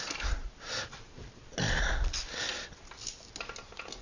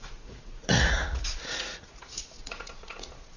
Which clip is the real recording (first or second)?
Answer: first